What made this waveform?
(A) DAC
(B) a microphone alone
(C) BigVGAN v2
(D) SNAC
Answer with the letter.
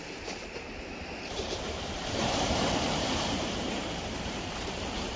C